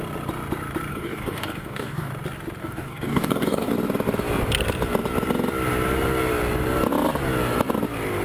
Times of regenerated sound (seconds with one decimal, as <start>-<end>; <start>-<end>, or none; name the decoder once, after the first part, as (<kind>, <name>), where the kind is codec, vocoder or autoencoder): 0.9-2.1 (codec, DAC); 2.6-3.7